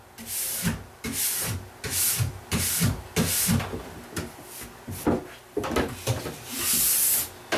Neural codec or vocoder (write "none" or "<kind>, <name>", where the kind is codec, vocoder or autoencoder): none